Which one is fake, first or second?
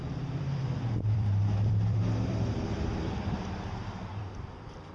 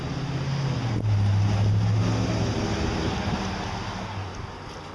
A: first